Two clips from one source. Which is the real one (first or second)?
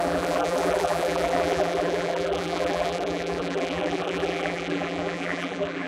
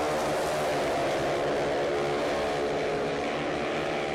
second